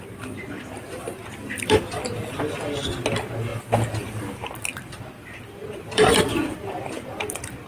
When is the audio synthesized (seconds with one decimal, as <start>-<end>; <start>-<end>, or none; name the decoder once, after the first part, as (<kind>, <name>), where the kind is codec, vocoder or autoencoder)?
0.0-7.7 (vocoder, BigVGAN v2)